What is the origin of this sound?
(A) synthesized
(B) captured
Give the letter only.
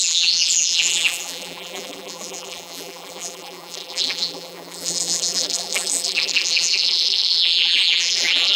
A